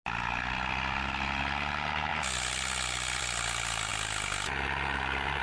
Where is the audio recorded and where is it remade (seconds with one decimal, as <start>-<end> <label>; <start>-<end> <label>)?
0.0-5.4 recorded